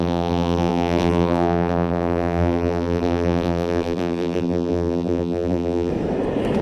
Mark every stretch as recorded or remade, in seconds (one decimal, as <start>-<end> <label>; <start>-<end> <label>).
0.0-5.9 remade; 5.9-6.6 recorded